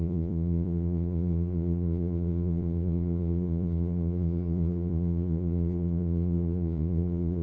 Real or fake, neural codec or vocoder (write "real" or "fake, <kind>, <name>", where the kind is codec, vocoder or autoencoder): fake, vocoder, Vocos